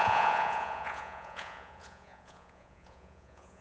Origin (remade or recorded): remade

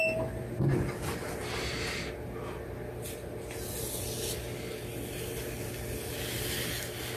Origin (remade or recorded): recorded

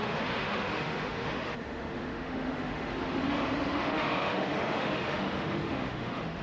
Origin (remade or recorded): remade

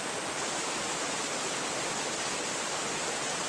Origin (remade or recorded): recorded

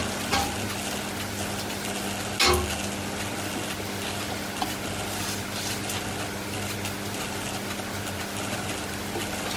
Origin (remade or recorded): recorded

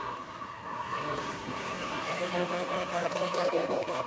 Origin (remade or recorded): remade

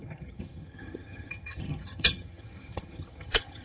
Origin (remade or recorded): remade